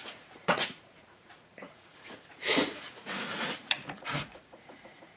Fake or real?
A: fake